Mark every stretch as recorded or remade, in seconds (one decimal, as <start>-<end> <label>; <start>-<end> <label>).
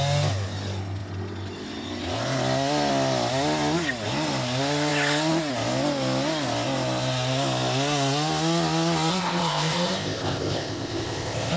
0.0-9.1 recorded; 9.1-11.6 remade